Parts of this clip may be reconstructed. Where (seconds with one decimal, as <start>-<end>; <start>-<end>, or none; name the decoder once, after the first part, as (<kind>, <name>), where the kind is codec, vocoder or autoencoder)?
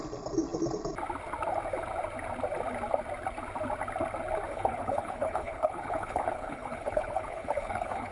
4.5-8.1 (codec, HILCodec)